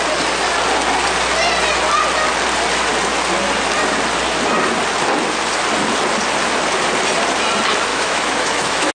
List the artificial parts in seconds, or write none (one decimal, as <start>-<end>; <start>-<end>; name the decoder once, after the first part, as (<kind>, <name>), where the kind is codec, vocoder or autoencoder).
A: 7.9-8.9 (autoencoder, DAC-VAE)